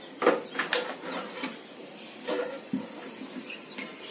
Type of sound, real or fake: fake